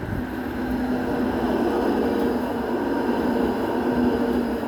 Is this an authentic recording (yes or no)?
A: yes